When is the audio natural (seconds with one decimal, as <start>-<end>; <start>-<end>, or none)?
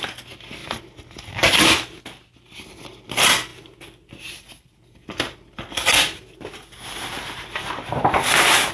0.0-8.7